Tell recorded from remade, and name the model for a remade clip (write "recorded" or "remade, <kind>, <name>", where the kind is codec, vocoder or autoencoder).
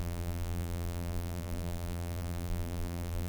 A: remade, vocoder, BigVGAN v2